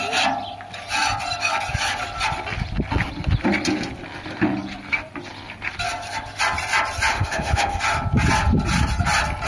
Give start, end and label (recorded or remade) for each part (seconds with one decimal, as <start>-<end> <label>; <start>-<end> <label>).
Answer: 0.0-7.1 recorded; 7.1-7.8 remade; 7.8-9.5 recorded